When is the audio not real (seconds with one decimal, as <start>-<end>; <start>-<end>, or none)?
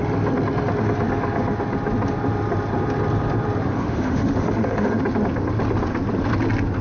3.7-5.0